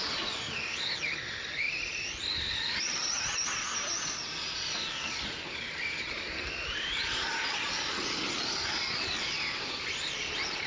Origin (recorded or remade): recorded